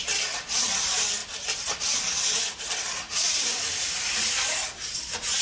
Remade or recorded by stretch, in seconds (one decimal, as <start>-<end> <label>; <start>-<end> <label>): 0.0-5.4 recorded